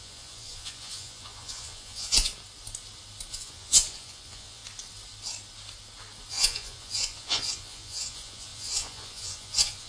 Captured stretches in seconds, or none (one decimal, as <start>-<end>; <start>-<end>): 2.3-3.3; 4.6-6.3

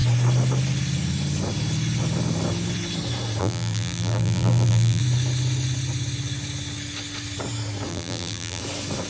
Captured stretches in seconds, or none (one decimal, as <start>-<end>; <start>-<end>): 0.0-3.4; 5.0-7.9; 8.6-9.1